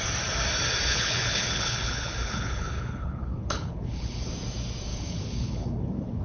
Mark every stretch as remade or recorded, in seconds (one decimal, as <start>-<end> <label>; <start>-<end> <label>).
0.0-0.9 recorded; 0.9-4.3 remade; 4.3-4.9 recorded; 4.9-6.2 remade